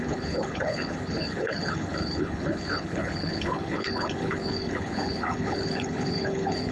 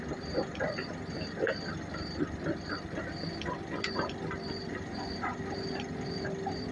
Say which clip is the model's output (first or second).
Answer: first